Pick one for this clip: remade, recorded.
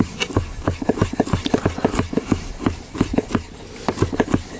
recorded